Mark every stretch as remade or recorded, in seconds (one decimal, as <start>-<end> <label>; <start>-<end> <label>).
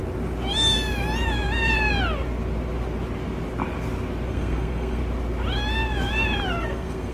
0.0-4.3 recorded; 4.3-5.0 remade; 5.0-6.6 recorded; 6.6-7.1 remade